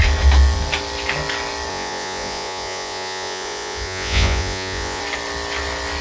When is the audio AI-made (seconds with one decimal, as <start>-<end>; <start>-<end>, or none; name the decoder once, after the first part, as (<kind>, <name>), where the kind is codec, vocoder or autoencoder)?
1.7-5.0 (vocoder, Vocos)